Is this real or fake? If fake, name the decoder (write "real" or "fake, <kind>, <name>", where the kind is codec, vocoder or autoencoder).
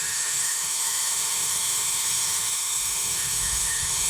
fake, autoencoder, DAC-VAE